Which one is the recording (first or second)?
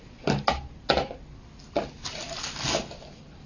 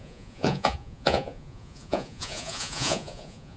first